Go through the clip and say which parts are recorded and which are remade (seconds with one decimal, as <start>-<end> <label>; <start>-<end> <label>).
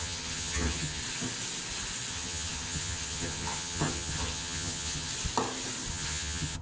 0.0-1.0 remade; 1.0-2.1 recorded; 2.1-5.1 remade; 5.1-5.9 recorded; 5.9-6.6 remade